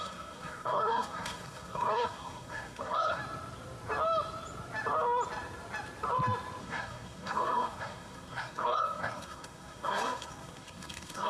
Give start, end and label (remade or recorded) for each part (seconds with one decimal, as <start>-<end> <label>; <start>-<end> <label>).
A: 0.0-3.2 remade; 3.2-6.6 recorded; 6.6-11.3 remade